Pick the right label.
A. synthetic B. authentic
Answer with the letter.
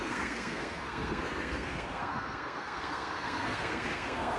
A